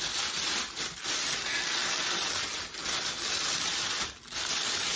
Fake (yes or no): no